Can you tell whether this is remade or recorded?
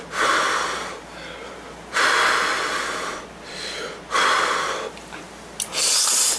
recorded